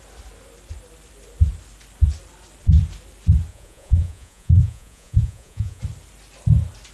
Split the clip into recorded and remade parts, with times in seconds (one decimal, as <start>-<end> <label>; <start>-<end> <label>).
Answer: 0.0-3.5 recorded; 3.5-5.8 remade; 5.8-6.9 recorded